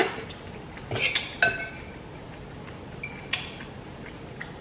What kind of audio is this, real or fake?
real